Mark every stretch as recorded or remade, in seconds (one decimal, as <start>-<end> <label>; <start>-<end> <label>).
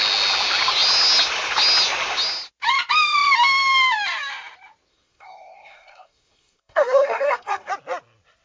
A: 0.0-4.9 recorded; 4.9-7.7 remade; 7.7-8.4 recorded